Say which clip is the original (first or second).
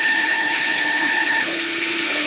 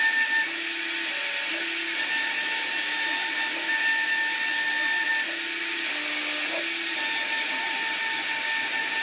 second